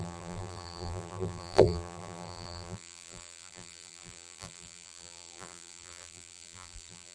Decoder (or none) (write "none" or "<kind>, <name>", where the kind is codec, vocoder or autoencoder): vocoder, BigVGAN v2